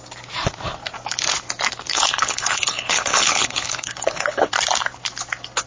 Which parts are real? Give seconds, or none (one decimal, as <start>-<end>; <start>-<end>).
0.0-1.9; 4.5-5.7